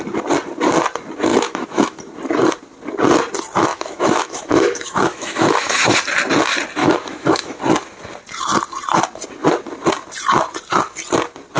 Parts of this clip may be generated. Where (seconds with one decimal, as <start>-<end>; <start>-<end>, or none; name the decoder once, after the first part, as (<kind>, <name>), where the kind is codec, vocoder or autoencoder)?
1.3-2.0 (autoencoder, DAC-VAE); 3.7-5.9; 6.8-7.6

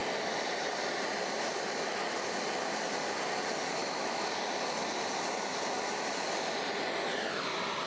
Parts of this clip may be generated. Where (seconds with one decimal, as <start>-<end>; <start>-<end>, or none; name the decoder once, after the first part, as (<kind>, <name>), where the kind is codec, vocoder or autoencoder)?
3.8-4.3 (autoencoder, DAC-VAE)

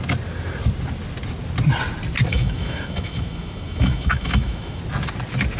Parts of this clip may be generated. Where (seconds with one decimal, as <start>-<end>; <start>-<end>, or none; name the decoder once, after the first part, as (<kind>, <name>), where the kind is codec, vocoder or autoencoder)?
2.3-4.8 (autoencoder, DAC-VAE)

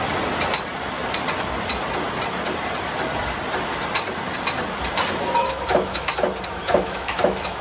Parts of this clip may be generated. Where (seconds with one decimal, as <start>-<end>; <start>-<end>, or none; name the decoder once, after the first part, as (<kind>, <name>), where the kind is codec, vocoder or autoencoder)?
5.4-6.1 (autoencoder, DAC-VAE); 6.6-7.6

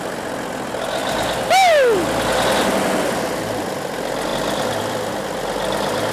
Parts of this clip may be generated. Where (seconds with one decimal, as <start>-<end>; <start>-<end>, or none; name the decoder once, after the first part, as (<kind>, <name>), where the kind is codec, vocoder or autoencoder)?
none